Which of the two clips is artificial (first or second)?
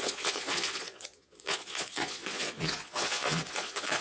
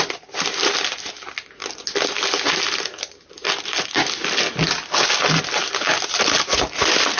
first